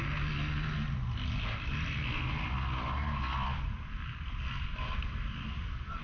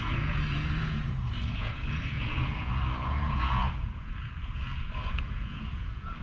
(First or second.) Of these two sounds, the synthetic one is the second